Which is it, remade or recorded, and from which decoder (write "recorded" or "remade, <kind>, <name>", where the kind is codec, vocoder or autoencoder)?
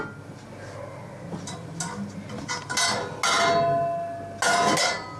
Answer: recorded